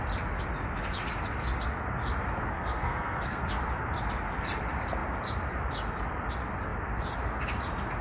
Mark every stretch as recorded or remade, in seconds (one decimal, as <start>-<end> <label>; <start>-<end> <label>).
0.0-2.5 recorded; 2.5-3.5 remade; 3.5-8.0 recorded